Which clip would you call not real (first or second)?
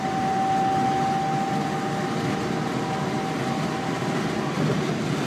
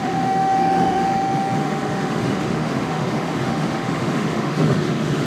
second